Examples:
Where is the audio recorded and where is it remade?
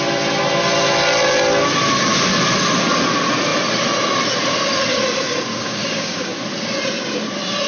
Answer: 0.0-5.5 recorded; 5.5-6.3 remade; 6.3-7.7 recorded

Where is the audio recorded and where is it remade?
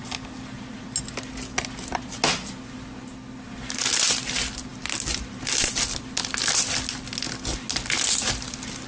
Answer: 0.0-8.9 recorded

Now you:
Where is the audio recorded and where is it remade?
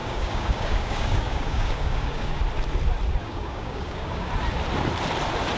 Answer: 0.0-2.4 remade; 2.4-3.2 recorded; 3.2-4.3 remade; 4.3-5.6 recorded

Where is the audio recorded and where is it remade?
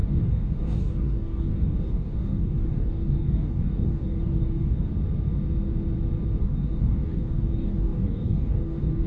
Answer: 0.0-4.9 remade; 4.9-6.4 recorded; 6.4-9.1 remade